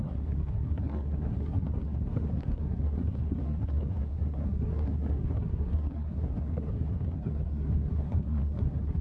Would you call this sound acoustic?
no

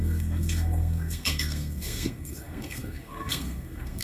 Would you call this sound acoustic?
no